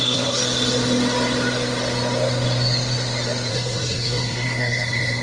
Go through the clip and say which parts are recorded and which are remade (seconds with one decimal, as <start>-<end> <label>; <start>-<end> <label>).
0.0-0.4 remade; 0.4-3.5 recorded; 3.5-5.2 remade